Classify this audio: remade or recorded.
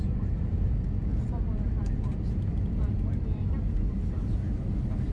recorded